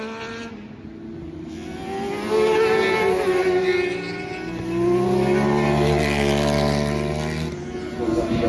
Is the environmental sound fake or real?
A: real